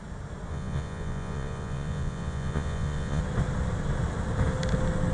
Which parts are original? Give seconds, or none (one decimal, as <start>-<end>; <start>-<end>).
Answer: 0.0-0.5; 3.2-5.1